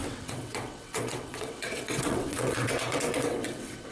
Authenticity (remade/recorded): remade